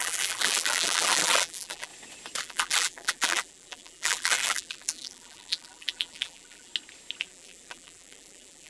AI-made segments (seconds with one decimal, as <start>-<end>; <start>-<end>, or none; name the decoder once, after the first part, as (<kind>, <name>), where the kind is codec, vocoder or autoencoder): 0.0-1.9 (vocoder, BigVGAN v2); 2.4-6.7; 7.2-8.7